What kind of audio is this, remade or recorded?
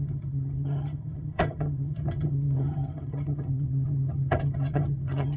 remade